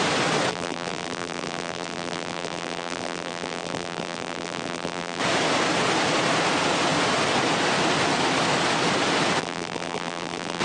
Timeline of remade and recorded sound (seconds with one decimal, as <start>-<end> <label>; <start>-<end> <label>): 0.0-0.5 recorded; 0.5-5.2 remade; 5.2-9.4 recorded; 9.4-10.6 remade